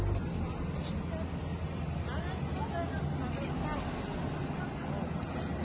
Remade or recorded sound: recorded